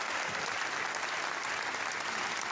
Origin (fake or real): real